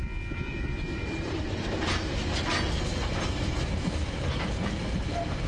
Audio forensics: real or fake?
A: real